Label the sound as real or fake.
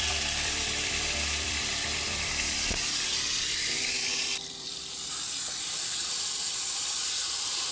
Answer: fake